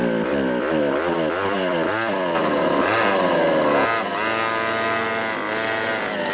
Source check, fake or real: real